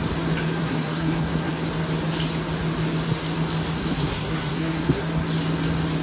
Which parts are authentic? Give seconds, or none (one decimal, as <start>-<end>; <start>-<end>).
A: 0.0-0.6; 1.5-3.8; 5.0-6.0